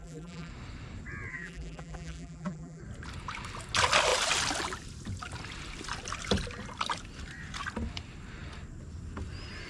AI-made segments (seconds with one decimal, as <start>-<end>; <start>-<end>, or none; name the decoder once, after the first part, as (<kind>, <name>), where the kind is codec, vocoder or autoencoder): 0.0-0.5 (vocoder, BigVGAN v2); 1.3-2.8

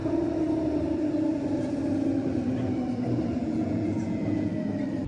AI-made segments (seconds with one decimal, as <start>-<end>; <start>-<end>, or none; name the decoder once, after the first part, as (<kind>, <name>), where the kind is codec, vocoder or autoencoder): 3.4-4.5 (vocoder, Vocos)

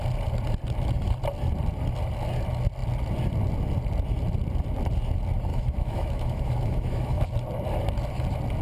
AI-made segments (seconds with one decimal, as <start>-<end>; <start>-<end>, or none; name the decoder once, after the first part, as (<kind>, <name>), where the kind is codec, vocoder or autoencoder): 5.5-7.2 (autoencoder, DAC-VAE)

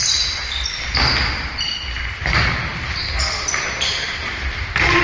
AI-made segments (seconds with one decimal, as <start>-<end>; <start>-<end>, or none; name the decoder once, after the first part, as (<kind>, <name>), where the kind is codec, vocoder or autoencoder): 2.7-4.6 (vocoder, BigVGAN v2)

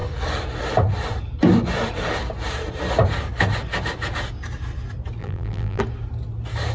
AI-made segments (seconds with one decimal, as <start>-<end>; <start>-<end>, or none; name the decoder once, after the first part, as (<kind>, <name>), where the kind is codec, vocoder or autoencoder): 5.2-5.8 (vocoder, BigVGAN v2)

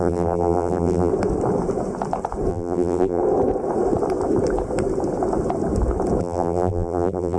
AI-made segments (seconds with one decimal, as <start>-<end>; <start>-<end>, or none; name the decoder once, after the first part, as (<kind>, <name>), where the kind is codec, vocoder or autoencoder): 0.0-1.1 (vocoder, BigVGAN v2); 2.5-3.2; 6.2-7.4

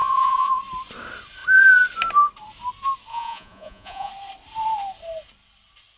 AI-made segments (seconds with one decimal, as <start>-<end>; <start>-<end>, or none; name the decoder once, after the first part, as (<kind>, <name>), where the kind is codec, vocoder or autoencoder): 0.0-0.6 (vocoder, Vocos); 3.1-4.1